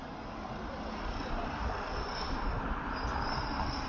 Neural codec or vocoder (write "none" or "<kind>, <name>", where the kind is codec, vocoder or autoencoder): none